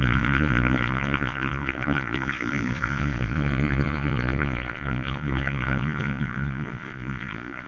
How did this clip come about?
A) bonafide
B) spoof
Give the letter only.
B